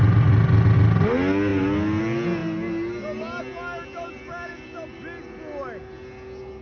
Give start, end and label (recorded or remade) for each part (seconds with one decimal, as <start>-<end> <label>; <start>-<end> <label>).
0.0-6.6 recorded